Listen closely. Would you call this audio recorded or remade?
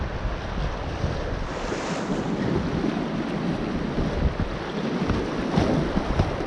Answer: recorded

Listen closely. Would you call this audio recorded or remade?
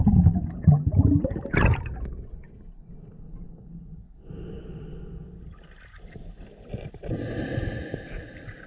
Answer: recorded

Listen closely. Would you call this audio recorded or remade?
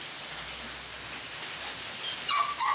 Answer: recorded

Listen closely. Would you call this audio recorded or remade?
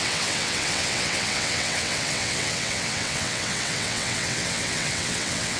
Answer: remade